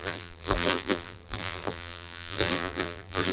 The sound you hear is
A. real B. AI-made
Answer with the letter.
B